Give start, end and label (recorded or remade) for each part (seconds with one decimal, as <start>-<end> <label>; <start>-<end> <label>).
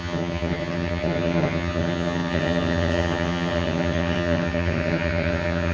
0.0-5.7 remade